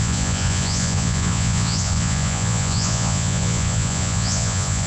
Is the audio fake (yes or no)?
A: yes